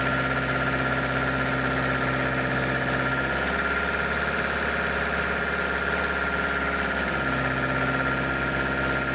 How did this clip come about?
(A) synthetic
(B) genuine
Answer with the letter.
B